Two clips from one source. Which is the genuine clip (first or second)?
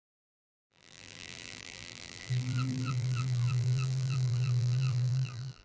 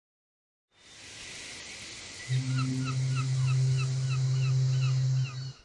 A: second